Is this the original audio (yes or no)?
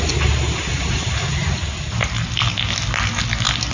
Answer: yes